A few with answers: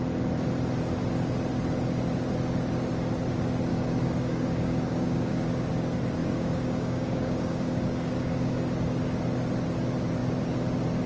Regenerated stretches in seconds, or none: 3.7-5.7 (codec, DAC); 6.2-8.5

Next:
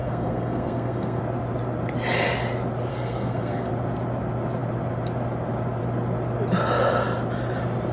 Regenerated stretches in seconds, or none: 0.0-1.2 (codec, SNAC); 2.9-3.7